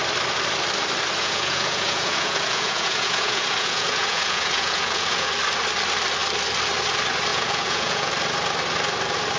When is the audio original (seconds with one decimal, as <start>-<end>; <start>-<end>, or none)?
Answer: 0.0-1.2; 5.3-7.3; 8.1-9.4